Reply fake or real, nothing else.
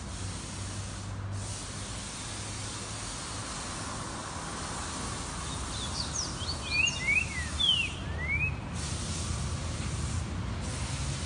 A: real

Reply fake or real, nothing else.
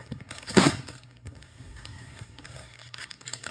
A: fake